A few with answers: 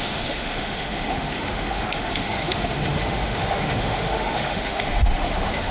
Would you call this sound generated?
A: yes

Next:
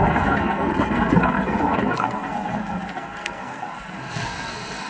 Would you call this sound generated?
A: yes